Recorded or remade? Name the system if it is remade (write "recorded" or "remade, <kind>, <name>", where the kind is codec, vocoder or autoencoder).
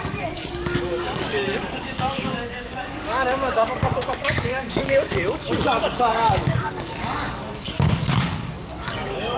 remade, codec, DAC